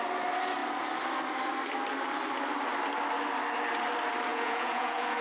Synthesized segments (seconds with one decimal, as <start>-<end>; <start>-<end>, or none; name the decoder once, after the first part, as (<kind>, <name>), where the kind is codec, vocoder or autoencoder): 4.3-5.2 (vocoder, Vocos)

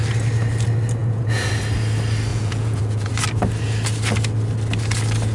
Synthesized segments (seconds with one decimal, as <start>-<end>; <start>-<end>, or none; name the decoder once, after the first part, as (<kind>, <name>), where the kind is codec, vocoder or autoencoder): 1.0-1.5 (vocoder, Vocos); 2.3-3.1